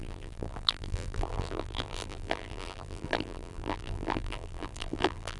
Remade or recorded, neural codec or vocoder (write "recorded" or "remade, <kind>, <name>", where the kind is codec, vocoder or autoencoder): remade, vocoder, BigVGAN v2